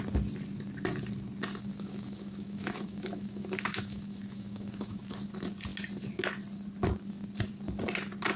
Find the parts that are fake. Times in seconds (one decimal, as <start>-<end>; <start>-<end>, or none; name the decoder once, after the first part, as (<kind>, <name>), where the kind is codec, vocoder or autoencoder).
1.7-5.3 (autoencoder, DAC-VAE)